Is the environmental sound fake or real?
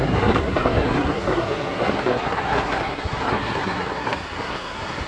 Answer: fake